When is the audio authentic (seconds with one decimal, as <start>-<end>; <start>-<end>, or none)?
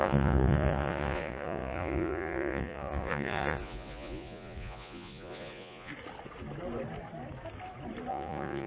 5.9-8.1